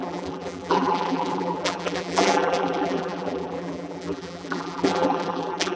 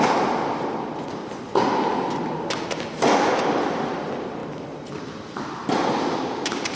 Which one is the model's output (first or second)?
first